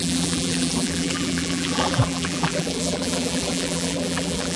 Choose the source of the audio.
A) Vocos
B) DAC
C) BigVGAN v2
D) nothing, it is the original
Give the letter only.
C